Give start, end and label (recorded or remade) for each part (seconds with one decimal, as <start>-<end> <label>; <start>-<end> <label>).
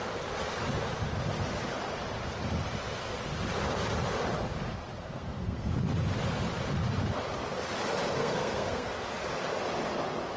0.0-5.0 recorded; 5.0-5.7 remade; 5.7-8.2 recorded; 8.2-8.9 remade; 8.9-10.4 recorded